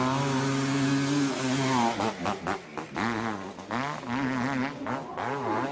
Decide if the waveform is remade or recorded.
recorded